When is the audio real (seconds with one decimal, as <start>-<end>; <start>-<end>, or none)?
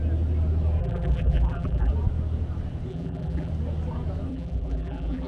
0.0-0.8; 1.9-2.9; 3.5-4.3